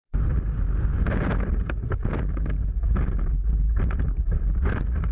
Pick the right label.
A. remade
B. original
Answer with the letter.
B